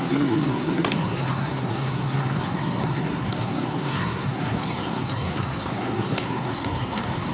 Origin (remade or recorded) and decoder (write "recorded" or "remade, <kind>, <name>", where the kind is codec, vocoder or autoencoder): remade, codec, SNAC